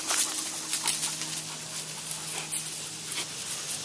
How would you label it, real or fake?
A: real